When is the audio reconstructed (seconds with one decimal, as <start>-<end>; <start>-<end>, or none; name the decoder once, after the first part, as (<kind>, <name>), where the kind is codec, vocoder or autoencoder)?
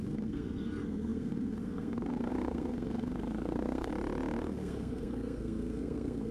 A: 0.0-3.9 (codec, SNAC); 4.4-6.3